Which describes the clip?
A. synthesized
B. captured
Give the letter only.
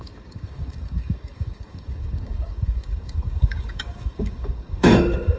A